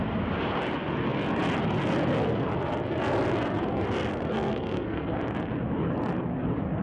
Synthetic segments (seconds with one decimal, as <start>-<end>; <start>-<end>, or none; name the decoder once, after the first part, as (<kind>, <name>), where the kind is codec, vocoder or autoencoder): 4.1-5.1 (codec, SNAC)